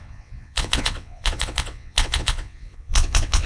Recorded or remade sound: remade